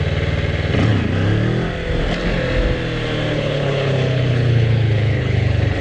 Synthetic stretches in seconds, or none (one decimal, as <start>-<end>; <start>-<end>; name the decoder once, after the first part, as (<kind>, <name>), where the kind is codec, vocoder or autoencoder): 3.3-5.8 (codec, HILCodec)